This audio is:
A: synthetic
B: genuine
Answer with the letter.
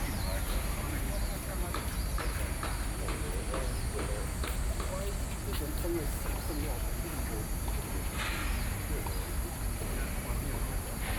B